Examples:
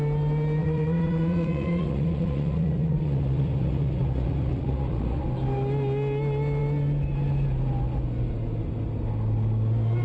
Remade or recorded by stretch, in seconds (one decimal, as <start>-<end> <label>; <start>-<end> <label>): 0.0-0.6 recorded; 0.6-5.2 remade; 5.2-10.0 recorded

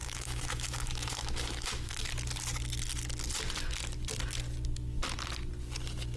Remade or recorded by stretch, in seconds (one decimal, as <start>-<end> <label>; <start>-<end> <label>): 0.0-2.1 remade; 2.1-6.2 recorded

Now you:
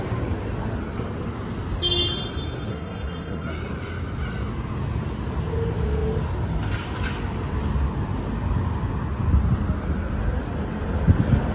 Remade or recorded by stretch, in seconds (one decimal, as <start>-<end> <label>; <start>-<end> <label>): 0.0-2.7 recorded; 2.7-3.5 remade; 3.5-11.5 recorded

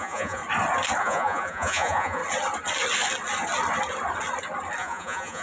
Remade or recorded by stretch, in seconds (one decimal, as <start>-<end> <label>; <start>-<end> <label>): 0.0-0.4 remade; 0.4-1.0 recorded; 1.0-2.2 remade; 2.2-4.8 recorded; 4.8-5.4 remade